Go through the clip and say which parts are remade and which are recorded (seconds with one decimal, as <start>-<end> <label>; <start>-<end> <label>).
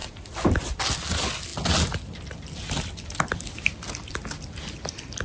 0.0-5.2 recorded